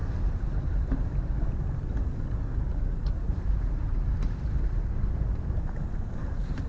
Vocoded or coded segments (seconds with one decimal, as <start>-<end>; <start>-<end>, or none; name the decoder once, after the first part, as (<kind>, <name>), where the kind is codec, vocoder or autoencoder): 0.0-2.1 (vocoder, BigVGAN v2); 2.7-6.7